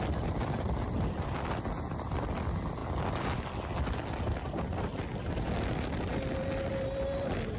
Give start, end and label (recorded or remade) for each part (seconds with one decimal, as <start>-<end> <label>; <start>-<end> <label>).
0.0-7.6 recorded